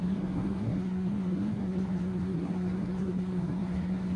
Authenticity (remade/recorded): remade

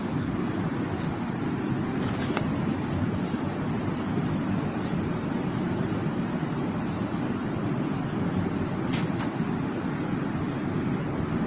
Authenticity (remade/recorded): recorded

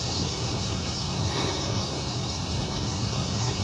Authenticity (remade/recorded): remade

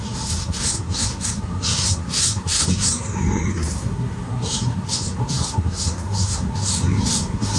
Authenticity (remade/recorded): remade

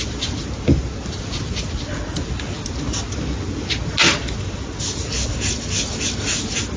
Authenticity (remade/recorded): recorded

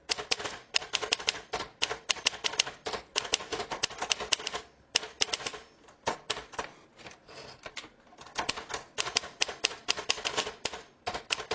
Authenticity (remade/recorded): recorded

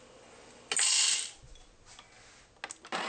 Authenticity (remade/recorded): recorded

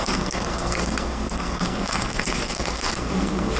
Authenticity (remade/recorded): remade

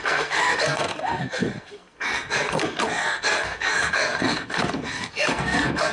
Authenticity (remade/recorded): remade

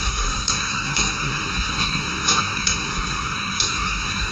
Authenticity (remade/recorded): remade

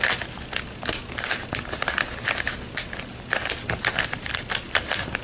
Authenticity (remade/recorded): recorded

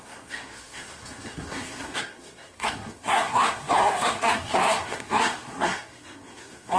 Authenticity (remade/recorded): remade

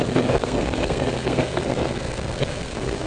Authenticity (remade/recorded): remade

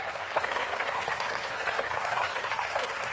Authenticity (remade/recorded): remade